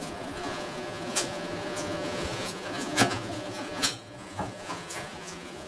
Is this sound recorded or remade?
remade